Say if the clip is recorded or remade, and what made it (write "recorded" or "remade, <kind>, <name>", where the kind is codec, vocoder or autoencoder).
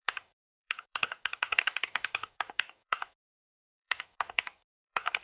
remade, codec, DAC